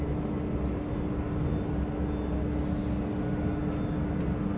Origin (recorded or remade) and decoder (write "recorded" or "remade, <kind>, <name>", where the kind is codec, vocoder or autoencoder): recorded